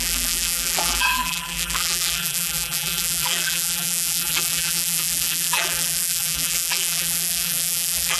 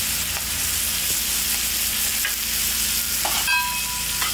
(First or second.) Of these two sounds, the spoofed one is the first